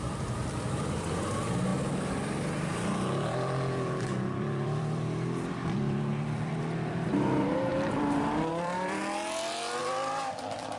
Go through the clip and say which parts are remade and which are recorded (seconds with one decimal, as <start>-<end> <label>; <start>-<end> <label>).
0.0-1.7 remade; 1.7-4.4 recorded; 4.4-7.7 remade; 7.7-8.5 recorded; 8.5-9.0 remade; 9.0-9.8 recorded; 9.8-10.8 remade